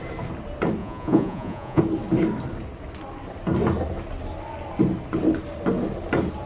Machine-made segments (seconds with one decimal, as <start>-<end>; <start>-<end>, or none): 0.8-1.8